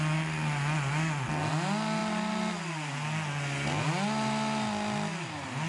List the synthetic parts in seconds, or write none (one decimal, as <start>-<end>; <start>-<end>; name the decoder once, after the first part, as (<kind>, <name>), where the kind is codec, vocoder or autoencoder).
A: none